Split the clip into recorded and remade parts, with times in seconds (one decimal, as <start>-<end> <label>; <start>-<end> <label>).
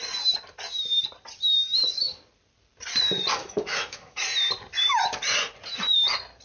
0.0-3.4 recorded; 3.4-4.2 remade; 4.2-6.4 recorded